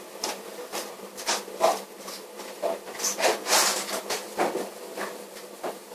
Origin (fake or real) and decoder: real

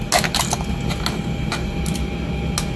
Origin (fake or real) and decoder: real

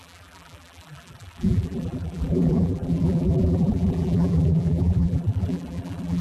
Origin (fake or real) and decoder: fake, vocoder, BigVGAN v2